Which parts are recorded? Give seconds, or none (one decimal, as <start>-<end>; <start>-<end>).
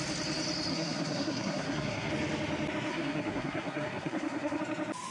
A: 0.0-0.7; 2.1-2.9; 4.6-5.1